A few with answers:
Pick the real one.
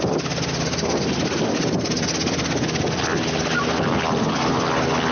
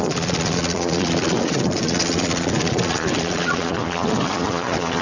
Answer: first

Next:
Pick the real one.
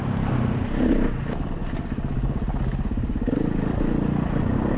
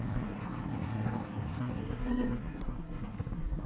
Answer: first